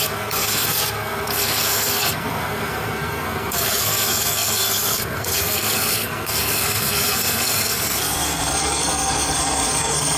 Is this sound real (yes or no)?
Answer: no